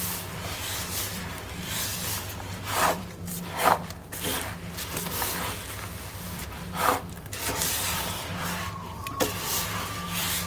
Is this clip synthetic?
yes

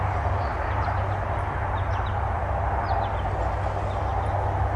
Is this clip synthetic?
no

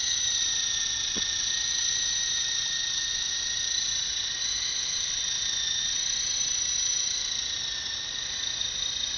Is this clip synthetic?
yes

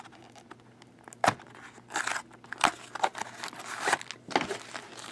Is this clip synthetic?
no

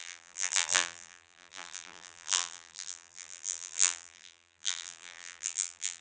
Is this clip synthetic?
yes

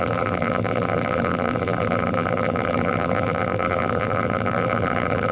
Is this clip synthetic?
yes